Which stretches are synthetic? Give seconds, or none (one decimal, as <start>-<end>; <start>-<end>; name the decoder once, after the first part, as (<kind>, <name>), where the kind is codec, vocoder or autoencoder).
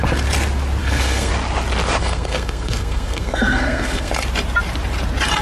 0.8-1.3 (codec, SNAC); 2.0-4.1